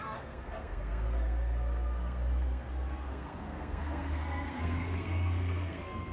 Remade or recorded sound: remade